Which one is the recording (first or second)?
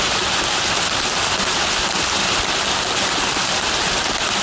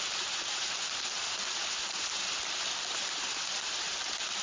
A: first